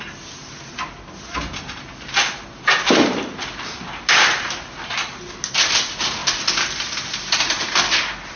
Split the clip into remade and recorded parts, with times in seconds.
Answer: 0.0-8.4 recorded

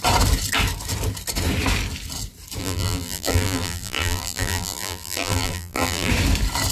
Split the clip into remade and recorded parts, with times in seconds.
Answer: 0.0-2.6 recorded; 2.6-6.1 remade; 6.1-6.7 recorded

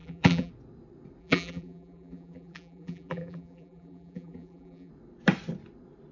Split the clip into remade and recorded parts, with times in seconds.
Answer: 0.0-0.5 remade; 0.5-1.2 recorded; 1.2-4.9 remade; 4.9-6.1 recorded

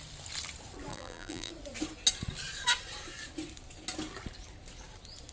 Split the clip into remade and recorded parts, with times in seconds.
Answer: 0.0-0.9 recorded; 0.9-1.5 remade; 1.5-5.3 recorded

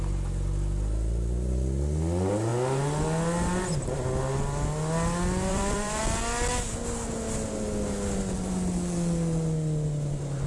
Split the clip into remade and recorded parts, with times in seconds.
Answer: 0.0-5.5 recorded; 5.5-6.0 remade; 6.0-10.5 recorded

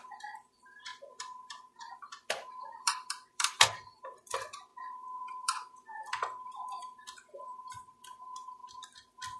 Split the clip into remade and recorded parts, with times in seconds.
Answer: 0.0-9.4 remade